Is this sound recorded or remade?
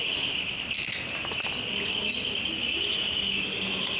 recorded